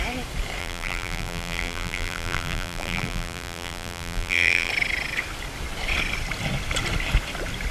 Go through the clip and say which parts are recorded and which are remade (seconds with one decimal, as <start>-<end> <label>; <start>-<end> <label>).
0.0-0.6 recorded; 0.6-4.7 remade; 4.7-7.7 recorded